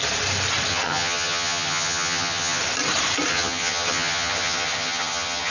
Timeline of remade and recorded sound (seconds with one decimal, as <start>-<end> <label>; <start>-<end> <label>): 0.0-0.7 recorded; 0.7-2.6 remade; 2.6-3.3 recorded; 3.3-5.5 remade